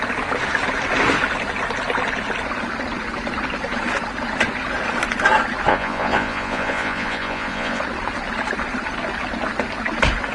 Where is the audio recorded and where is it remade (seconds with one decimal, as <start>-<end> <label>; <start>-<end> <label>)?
0.0-5.7 recorded; 5.7-7.8 remade; 7.8-10.3 recorded